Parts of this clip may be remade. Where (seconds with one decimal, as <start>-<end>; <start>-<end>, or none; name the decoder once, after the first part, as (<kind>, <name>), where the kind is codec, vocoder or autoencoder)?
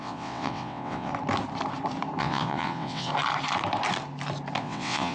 0.0-1.1 (vocoder, WaveNeXt); 2.2-3.1; 4.6-5.1